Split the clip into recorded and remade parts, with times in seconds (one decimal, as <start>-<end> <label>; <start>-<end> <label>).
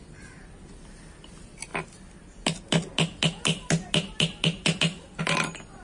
0.0-5.8 recorded